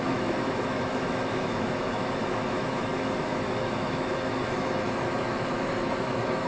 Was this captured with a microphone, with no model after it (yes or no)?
no